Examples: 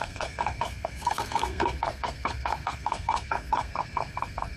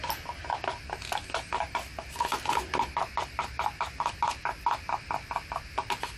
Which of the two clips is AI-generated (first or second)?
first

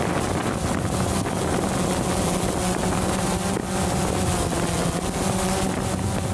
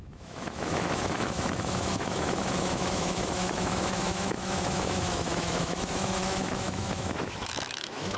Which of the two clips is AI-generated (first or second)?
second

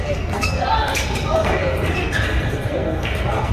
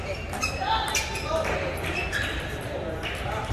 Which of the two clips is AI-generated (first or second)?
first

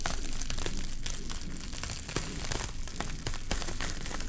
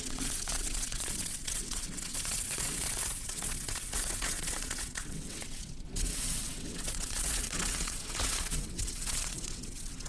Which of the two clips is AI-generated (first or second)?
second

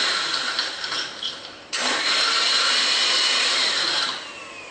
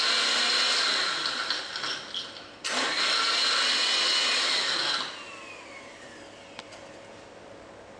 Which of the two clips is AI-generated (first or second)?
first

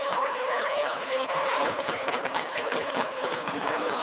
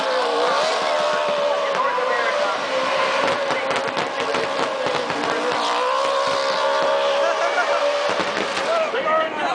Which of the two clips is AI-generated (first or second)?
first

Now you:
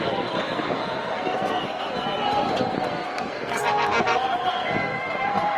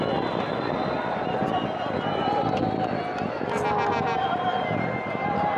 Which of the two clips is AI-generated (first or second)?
first